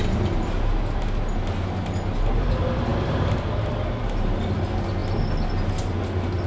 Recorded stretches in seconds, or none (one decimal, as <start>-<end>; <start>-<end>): 0.0-6.5